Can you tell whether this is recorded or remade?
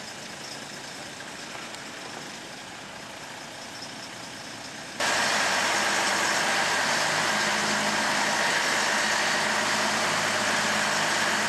recorded